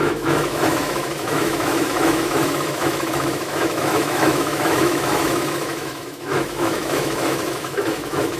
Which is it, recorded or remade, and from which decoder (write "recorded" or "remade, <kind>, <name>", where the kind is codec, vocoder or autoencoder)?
remade, autoencoder, DAC-VAE